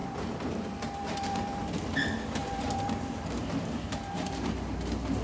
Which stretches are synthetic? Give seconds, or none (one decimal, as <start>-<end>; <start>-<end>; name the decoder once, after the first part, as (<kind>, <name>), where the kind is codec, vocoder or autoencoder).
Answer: 0.0-1.6 (vocoder, BigVGAN v2); 2.4-4.6